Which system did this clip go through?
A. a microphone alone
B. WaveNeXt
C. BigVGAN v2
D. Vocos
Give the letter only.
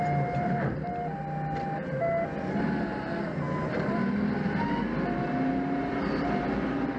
A